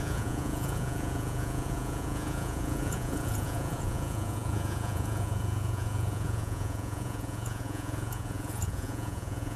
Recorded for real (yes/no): no